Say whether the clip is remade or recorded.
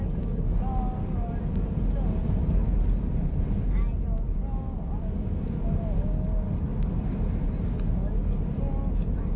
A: recorded